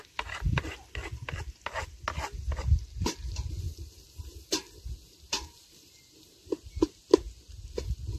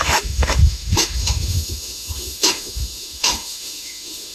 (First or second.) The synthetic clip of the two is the second